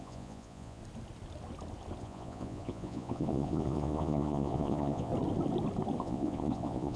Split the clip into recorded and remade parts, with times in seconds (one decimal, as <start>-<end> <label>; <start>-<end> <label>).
0.0-0.8 remade; 0.8-2.0 recorded; 2.0-5.1 remade; 5.1-6.0 recorded; 6.0-7.0 remade

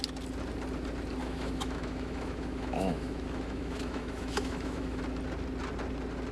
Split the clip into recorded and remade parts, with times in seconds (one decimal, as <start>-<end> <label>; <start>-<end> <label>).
0.0-1.2 recorded; 1.2-5.0 remade; 5.0-6.3 recorded

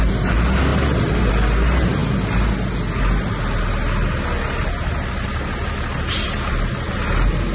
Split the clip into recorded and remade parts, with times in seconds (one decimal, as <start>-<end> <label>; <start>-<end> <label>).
0.0-7.5 recorded

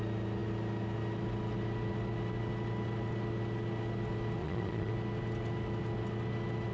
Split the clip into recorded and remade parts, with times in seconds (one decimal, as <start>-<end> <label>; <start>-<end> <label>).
0.0-4.4 recorded; 4.4-4.9 remade; 4.9-6.7 recorded

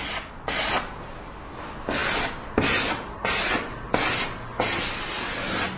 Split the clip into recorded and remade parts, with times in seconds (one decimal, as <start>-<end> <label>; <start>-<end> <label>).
0.0-5.8 recorded